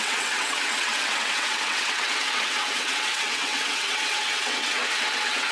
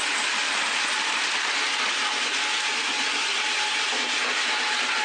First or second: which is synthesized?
first